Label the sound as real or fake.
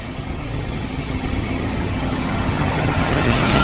fake